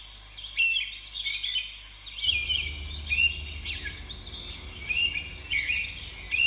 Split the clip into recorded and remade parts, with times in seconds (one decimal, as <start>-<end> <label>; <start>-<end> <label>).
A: 0.0-6.5 recorded